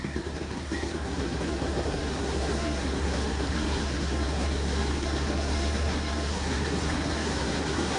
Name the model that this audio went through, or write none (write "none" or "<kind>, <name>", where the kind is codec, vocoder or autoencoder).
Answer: codec, SNAC